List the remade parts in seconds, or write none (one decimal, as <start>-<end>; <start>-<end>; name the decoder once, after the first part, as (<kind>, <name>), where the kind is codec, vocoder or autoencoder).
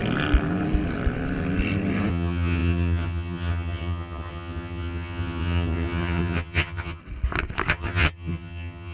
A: 2.1-7.0 (vocoder, HiFi-GAN); 7.7-8.9